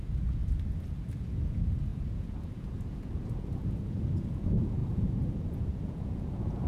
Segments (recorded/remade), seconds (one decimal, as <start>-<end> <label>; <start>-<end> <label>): 0.0-0.4 remade; 0.4-1.2 recorded; 1.2-6.7 remade